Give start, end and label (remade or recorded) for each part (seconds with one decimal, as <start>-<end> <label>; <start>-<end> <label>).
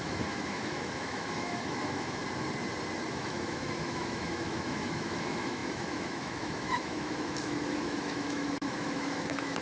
0.0-2.2 remade; 2.2-3.1 recorded; 3.1-9.6 remade